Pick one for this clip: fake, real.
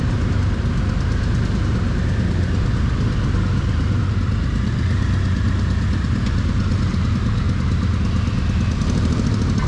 real